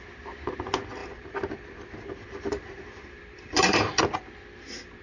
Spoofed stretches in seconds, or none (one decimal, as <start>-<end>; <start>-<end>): 1.0-4.0